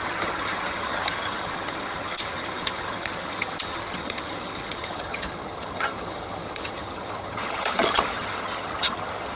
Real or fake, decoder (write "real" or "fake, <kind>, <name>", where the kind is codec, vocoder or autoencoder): fake, vocoder, HiFi-GAN